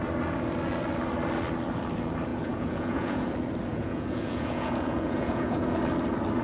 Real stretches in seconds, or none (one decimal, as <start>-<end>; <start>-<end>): 0.0-2.3; 3.3-3.7; 5.8-6.4